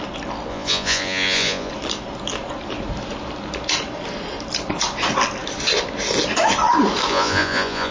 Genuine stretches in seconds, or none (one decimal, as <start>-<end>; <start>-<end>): 0.0-0.5; 1.7-7.1